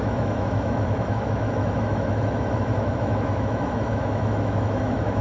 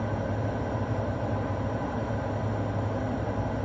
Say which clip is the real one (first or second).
second